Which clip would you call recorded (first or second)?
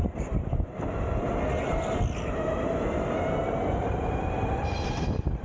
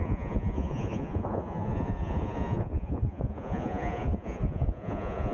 first